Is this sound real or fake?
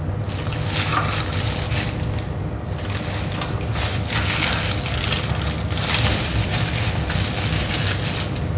real